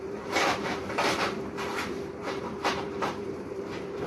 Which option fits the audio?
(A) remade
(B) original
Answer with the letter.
A